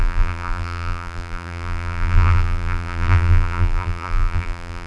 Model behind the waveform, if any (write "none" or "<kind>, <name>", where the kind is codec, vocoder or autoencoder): vocoder, BigVGAN v2